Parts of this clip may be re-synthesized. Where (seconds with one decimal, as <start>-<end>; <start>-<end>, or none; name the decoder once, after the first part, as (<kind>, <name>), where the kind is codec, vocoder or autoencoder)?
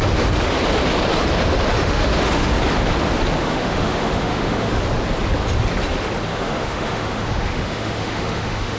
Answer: 1.8-2.5 (autoencoder, DAC-VAE); 3.4-4.8; 6.3-8.8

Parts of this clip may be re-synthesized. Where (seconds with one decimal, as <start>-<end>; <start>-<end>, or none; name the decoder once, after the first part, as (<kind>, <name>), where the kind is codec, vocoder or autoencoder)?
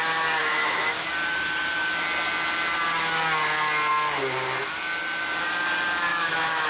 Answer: 0.4-1.1 (autoencoder, DAC-VAE); 6.1-6.7